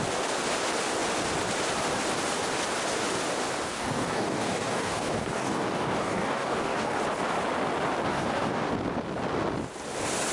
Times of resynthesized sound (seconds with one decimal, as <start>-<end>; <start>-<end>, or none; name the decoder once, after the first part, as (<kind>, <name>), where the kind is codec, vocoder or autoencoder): 3.7-7.0 (codec, DAC); 8.1-8.7